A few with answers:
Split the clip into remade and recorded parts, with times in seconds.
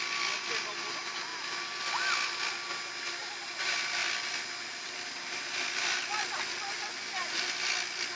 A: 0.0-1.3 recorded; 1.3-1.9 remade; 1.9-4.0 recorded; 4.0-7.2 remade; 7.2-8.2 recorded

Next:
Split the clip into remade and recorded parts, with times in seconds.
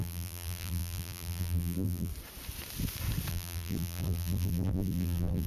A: 0.0-2.1 remade; 2.1-3.3 recorded; 3.3-5.5 remade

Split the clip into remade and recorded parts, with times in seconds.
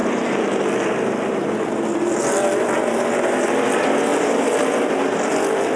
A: 0.0-5.8 recorded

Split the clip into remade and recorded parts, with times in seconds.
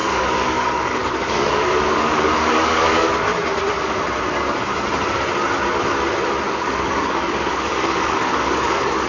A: 0.0-3.3 remade; 3.3-6.5 recorded; 6.5-9.1 remade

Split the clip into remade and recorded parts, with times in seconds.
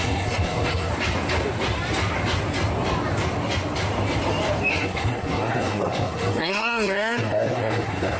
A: 0.0-0.9 remade; 0.9-4.7 recorded; 4.7-8.2 remade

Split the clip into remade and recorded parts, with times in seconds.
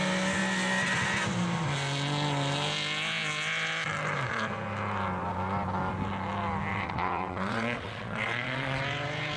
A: 0.0-6.7 recorded; 6.7-8.8 remade; 8.8-9.4 recorded